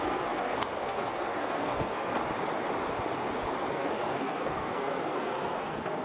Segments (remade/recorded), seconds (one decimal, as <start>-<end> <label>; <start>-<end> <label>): 0.0-2.1 remade; 2.1-3.7 recorded; 3.7-6.0 remade